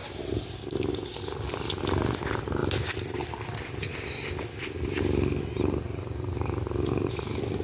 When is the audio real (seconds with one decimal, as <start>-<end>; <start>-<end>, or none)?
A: 0.0-7.6